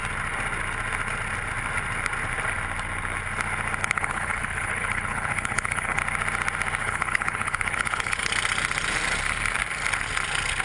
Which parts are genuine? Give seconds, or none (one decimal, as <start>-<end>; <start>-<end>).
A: 0.0-3.8; 6.0-6.8; 8.3-10.6